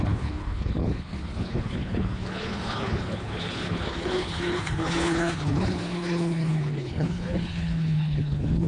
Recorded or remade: remade